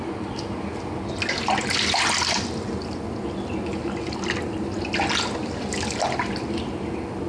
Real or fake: real